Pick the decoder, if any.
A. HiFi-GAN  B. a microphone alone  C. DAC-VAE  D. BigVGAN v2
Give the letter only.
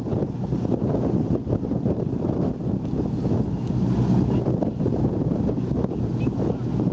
B